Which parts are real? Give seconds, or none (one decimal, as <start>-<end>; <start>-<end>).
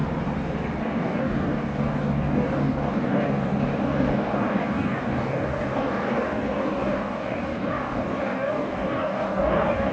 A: 0.0-0.8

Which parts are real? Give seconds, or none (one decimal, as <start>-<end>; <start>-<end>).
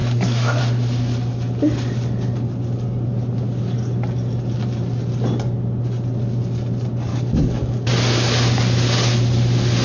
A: 0.6-7.1; 7.9-9.8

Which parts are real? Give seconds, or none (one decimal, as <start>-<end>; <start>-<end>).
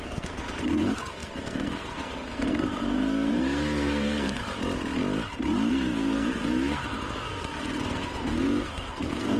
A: 4.4-5.7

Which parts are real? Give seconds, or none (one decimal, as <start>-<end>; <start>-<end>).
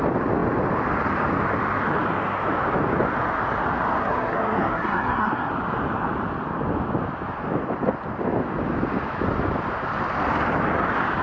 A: 0.0-4.0; 5.5-11.2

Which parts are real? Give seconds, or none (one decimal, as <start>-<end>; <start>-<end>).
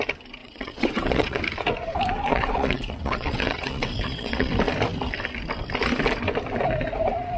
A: 0.0-0.4; 1.4-2.3; 4.5-7.4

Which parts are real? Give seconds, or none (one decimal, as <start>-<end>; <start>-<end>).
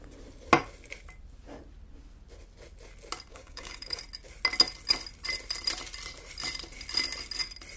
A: 0.0-3.3; 4.0-7.8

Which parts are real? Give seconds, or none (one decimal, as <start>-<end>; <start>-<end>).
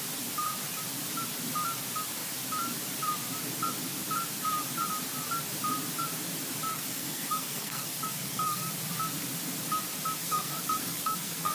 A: 0.0-6.7; 8.7-10.2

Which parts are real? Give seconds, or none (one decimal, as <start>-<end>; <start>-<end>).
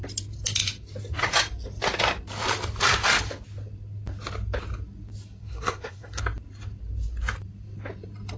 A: 0.0-5.4; 6.2-8.4